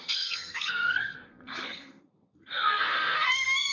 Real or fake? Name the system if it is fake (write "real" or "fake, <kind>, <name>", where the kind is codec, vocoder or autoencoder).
fake, codec, SNAC